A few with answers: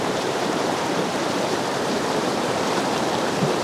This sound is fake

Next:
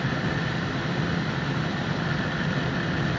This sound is fake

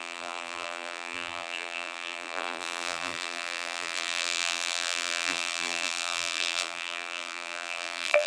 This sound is fake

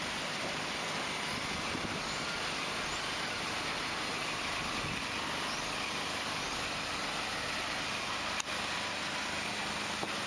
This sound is real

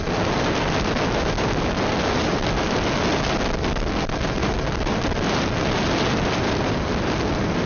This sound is real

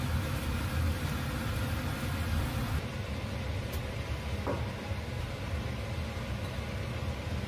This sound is real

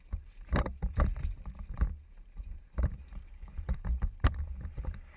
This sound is fake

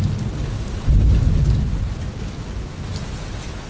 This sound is real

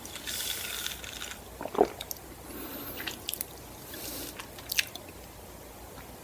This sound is real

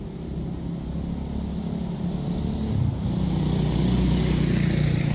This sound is real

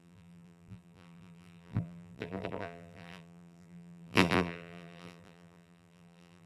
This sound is fake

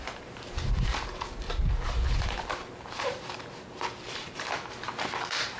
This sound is fake